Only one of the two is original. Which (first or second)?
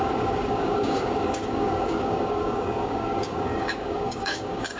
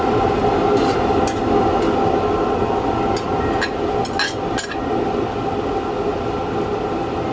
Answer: second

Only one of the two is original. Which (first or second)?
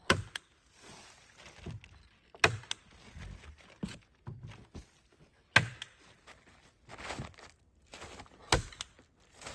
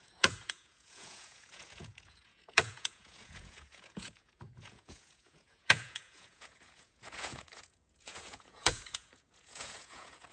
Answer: first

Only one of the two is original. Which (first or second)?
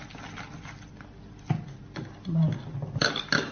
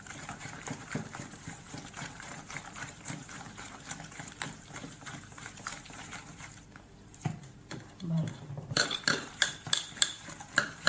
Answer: first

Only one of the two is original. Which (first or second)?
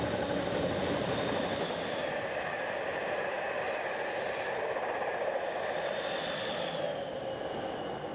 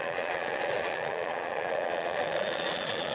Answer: first